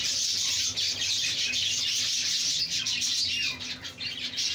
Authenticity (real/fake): real